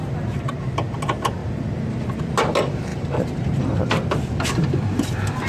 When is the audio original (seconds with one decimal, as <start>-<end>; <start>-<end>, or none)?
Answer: 0.5-2.9; 3.8-5.5